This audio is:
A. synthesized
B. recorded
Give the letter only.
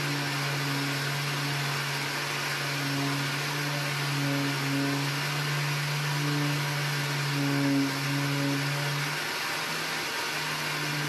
B